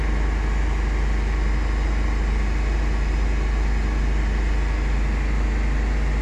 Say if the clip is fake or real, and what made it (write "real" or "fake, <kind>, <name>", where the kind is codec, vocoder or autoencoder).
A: real